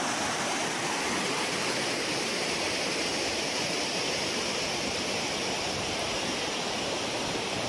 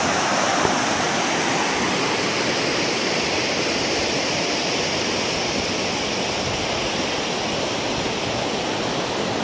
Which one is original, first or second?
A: second